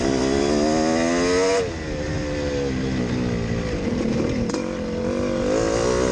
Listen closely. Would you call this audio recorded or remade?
recorded